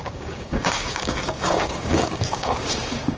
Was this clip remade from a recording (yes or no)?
yes